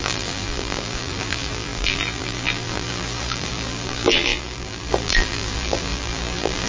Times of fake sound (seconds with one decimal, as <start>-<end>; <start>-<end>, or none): 0.0-6.7